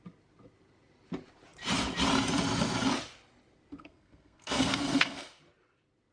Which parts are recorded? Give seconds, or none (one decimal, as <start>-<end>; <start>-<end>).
0.0-3.8; 5.4-6.1